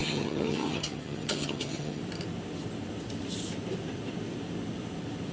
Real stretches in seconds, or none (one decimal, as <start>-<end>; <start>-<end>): 2.0-5.3